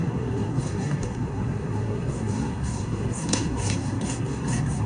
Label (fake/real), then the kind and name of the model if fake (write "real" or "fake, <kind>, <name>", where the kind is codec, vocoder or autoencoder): fake, codec, SNAC